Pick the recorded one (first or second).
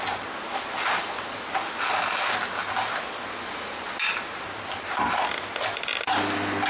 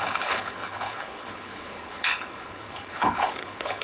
first